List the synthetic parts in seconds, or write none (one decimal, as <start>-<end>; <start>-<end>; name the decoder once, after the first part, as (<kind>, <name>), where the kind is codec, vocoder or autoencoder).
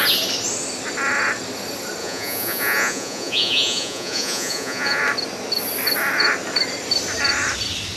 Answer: 2.0-5.0 (vocoder, Vocos)